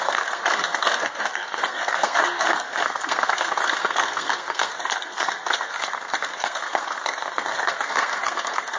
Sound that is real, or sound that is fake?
fake